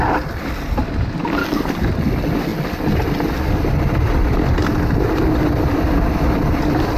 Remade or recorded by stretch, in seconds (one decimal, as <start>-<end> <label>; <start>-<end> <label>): 0.0-1.4 recorded; 1.4-1.9 remade; 1.9-7.0 recorded

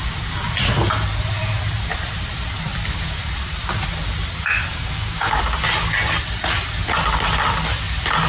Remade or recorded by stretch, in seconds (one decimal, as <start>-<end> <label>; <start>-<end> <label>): 0.0-4.7 recorded; 4.7-5.4 remade; 5.4-8.3 recorded

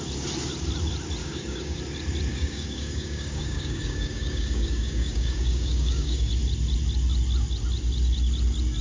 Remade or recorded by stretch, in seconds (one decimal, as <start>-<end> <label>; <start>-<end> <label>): 0.0-1.2 recorded; 1.2-1.8 remade; 1.8-2.3 recorded; 2.3-6.3 remade; 6.3-8.8 recorded

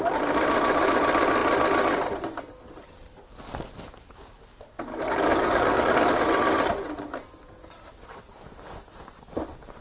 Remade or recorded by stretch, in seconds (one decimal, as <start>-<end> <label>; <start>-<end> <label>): 0.0-4.9 recorded; 4.9-6.1 remade; 6.1-9.8 recorded

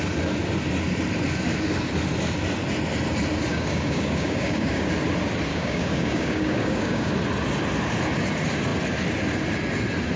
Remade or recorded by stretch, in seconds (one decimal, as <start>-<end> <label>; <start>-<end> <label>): 0.0-3.5 recorded; 3.5-4.9 remade; 4.9-5.5 recorded; 5.5-7.1 remade; 7.1-10.2 recorded

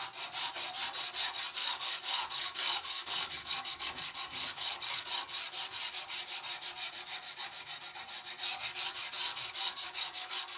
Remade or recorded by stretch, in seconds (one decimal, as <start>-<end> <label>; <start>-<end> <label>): 0.0-1.6 recorded; 1.6-5.4 remade; 5.4-9.3 recorded; 9.3-10.6 remade